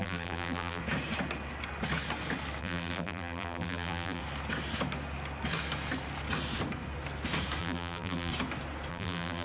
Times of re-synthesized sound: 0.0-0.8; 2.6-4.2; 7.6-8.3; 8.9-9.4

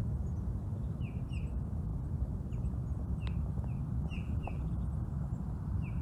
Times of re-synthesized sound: 4.0-4.7

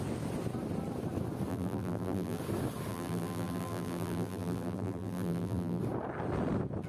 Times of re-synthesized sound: 1.5-2.4; 2.9-5.8